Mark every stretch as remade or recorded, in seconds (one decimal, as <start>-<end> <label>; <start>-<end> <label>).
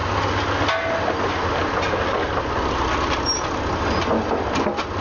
0.0-5.0 recorded